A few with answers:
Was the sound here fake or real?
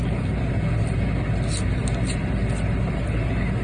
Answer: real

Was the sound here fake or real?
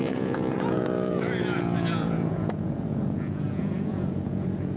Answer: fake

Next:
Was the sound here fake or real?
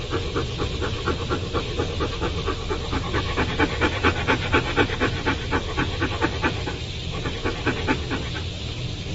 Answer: real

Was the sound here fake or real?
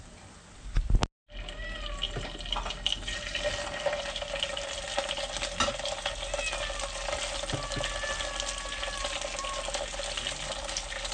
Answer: real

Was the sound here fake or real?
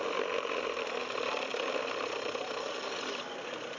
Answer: real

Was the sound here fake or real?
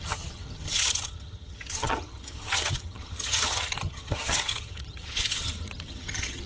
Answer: fake